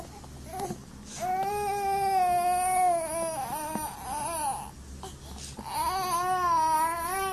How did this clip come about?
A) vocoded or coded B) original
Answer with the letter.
B